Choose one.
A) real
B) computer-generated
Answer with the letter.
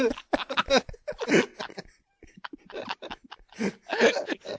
A